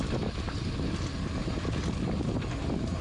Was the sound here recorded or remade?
recorded